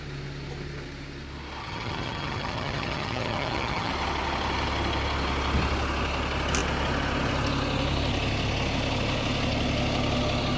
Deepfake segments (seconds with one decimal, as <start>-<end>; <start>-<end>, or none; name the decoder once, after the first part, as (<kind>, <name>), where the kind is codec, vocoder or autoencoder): 1.6-3.9 (vocoder, HiFi-GAN)